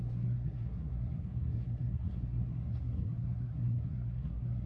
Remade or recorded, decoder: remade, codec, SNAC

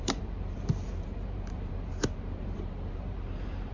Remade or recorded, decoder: remade, vocoder, BigVGAN v2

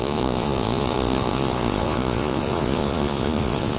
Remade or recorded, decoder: remade, vocoder, Vocos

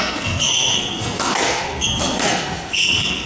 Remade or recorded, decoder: remade, codec, SNAC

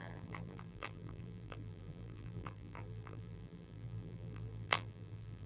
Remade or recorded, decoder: remade, vocoder, BigVGAN v2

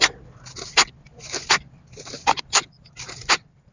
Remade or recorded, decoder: recorded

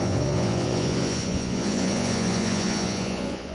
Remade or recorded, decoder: remade, vocoder, Vocos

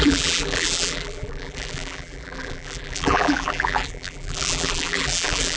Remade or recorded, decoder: remade, vocoder, BigVGAN v2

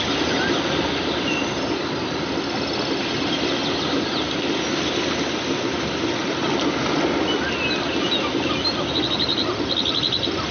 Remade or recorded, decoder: recorded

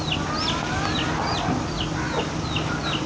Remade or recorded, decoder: recorded